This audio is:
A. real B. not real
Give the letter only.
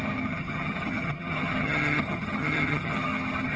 B